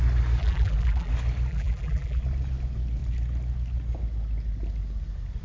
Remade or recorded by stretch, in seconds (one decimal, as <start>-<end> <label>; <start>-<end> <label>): 0.0-0.4 recorded; 0.4-1.1 remade; 1.1-1.5 recorded; 1.5-2.2 remade; 2.2-5.4 recorded